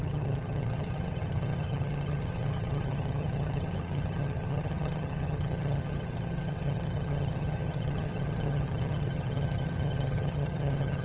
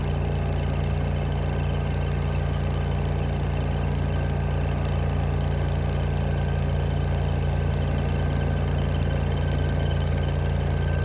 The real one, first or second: second